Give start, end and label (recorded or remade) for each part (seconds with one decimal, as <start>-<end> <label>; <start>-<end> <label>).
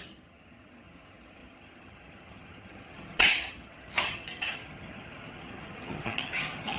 0.0-6.8 remade